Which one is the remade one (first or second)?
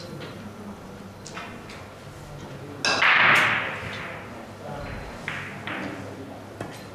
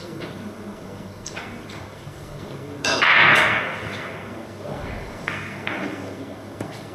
second